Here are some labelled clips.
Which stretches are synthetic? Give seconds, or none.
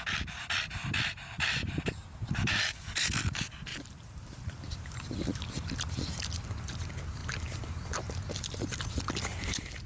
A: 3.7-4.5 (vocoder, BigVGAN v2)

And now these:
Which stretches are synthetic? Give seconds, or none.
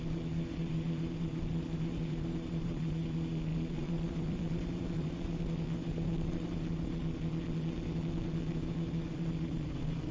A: 0.0-7.0 (vocoder, BigVGAN v2); 8.5-10.1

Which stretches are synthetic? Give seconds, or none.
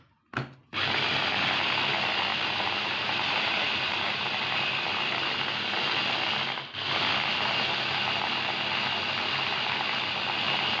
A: 2.3-4.2 (vocoder, BigVGAN v2)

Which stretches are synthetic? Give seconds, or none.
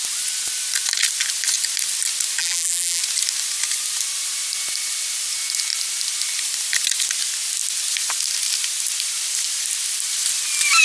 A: 2.4-3.0 (vocoder, BigVGAN v2)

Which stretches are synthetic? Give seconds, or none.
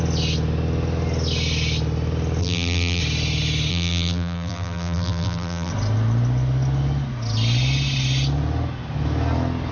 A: 2.4-3.0 (vocoder, BigVGAN v2); 3.7-5.7